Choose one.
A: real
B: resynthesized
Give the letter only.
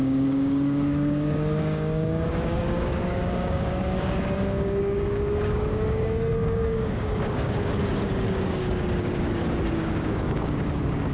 B